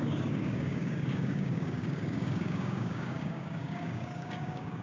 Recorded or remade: remade